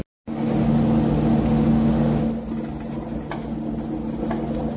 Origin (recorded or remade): recorded